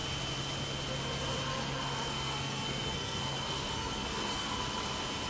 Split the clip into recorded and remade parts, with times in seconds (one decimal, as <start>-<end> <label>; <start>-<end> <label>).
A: 0.0-1.5 recorded; 1.5-4.6 remade; 4.6-5.3 recorded